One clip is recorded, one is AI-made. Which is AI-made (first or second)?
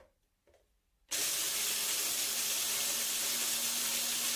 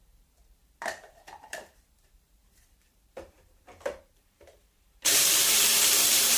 second